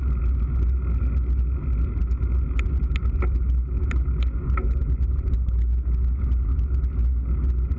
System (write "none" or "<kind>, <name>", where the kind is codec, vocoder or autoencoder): none